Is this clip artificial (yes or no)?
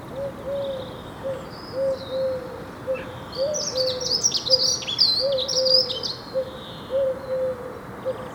no